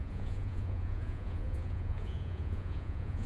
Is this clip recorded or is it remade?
remade